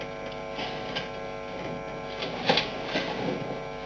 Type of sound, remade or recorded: recorded